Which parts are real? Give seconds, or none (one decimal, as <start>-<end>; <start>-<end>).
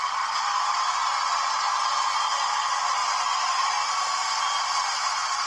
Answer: 1.0-1.8; 3.0-4.4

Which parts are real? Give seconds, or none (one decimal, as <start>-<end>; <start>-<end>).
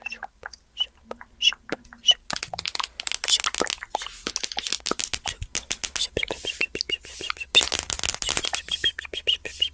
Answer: 0.0-9.7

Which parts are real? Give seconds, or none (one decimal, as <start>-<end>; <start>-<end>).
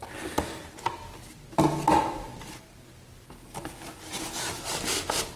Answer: 0.0-5.4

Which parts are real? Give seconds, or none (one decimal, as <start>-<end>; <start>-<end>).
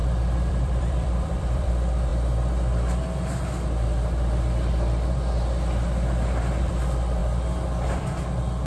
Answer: 1.7-8.7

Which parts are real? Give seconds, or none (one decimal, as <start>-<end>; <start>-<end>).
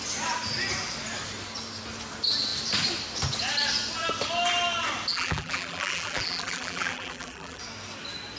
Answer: 0.0-5.1; 7.6-8.4